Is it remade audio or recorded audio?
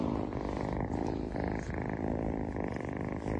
recorded